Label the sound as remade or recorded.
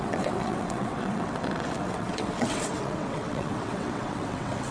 remade